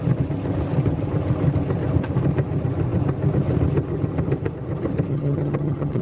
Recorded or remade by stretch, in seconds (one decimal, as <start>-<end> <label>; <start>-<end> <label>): 0.0-5.1 recorded; 5.1-6.0 remade